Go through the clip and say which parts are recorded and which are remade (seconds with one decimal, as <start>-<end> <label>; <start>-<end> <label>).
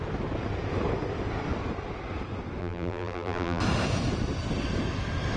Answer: 0.0-2.6 recorded; 2.6-3.6 remade; 3.6-5.4 recorded